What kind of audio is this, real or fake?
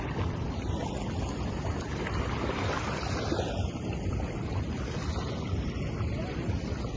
real